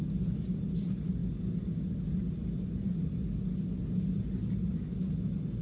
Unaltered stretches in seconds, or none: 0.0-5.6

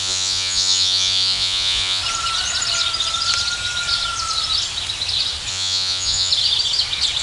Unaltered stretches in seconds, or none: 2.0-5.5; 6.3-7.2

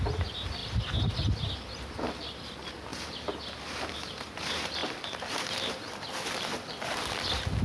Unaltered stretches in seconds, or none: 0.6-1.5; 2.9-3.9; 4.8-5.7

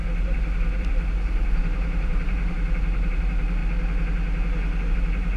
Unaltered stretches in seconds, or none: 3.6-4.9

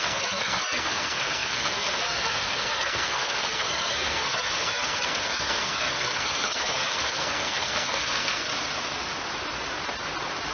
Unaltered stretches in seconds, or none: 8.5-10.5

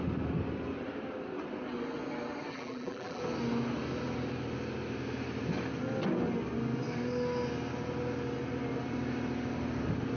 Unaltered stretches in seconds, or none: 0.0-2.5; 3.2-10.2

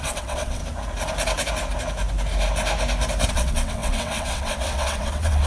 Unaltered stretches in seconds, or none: 0.6-3.3

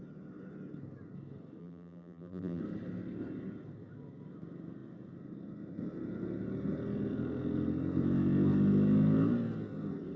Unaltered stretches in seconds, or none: 0.0-1.6; 2.6-10.2